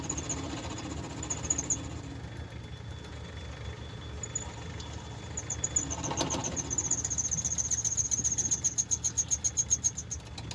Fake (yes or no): no